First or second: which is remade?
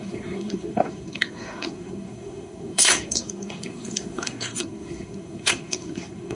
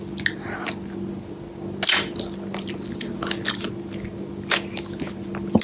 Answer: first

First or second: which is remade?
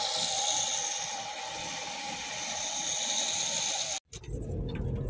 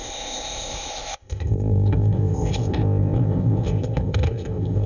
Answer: second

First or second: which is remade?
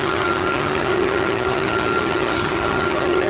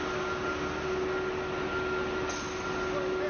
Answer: first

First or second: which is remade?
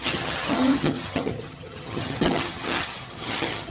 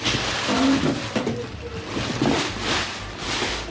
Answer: first